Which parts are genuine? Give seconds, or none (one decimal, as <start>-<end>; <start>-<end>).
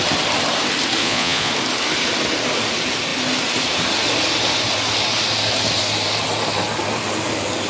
0.0-1.0; 1.5-7.7